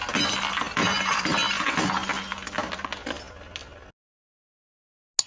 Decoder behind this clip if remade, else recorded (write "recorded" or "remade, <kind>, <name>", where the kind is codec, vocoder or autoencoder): recorded